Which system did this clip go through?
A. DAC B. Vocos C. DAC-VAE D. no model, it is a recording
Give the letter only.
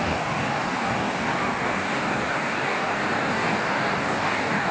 A